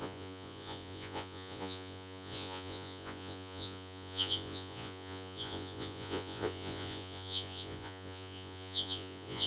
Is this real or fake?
fake